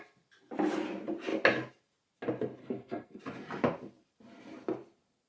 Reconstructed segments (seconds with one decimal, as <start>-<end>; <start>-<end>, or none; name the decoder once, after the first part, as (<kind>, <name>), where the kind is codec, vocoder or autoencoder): 2.6-3.2 (codec, SNAC)